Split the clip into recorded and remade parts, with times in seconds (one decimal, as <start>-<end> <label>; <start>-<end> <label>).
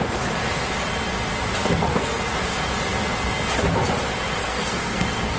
0.0-1.6 recorded; 1.6-2.2 remade; 2.2-4.4 recorded; 4.4-5.4 remade